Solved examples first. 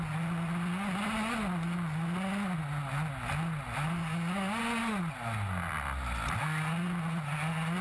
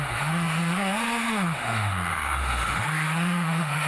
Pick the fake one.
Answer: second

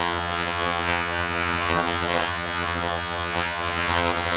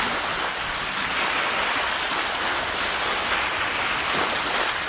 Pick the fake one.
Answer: first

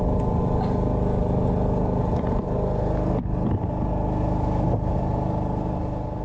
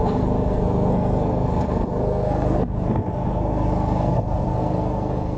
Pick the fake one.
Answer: second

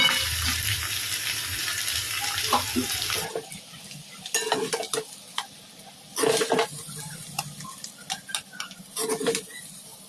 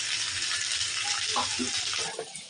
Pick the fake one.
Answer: first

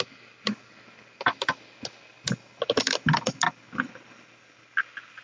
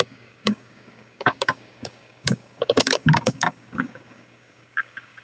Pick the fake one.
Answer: second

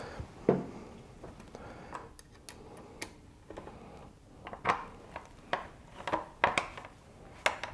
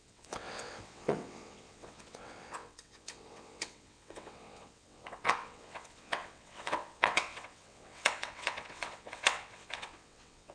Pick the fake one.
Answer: second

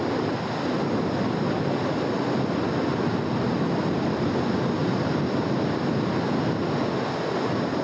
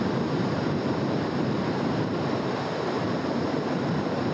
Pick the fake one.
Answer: second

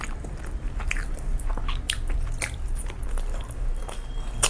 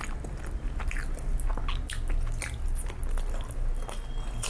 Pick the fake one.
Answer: first